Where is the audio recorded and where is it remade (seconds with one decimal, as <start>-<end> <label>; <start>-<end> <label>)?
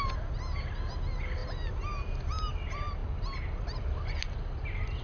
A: 0.0-5.0 recorded